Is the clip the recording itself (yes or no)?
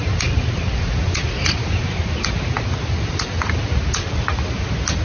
yes